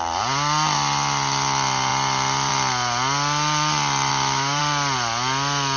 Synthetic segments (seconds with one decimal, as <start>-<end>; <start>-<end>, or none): 4.1-4.6